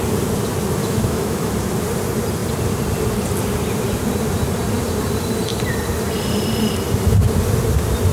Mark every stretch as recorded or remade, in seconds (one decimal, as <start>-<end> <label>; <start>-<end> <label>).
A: 0.0-0.8 recorded; 0.8-1.5 remade; 1.5-8.1 recorded